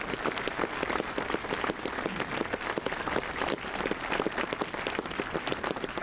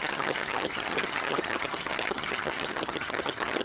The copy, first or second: second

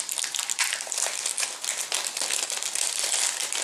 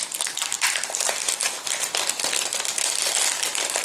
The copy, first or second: first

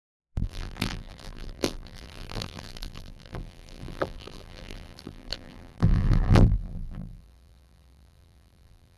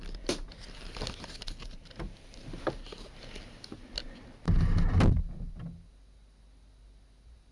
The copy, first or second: first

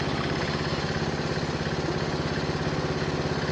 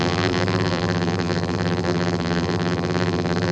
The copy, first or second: second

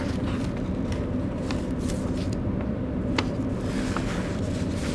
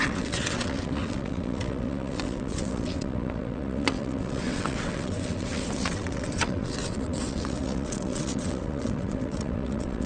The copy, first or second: second